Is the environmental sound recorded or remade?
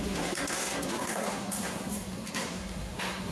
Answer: remade